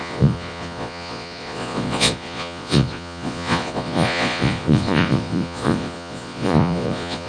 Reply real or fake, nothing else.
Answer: fake